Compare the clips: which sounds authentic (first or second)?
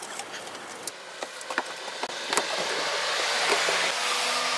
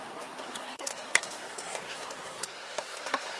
first